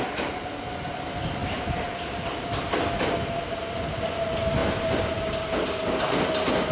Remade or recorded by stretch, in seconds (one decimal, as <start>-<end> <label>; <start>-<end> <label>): 0.0-6.7 recorded